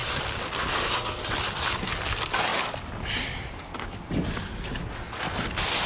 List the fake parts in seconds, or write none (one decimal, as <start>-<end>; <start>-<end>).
none